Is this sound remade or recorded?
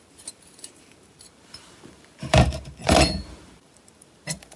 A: remade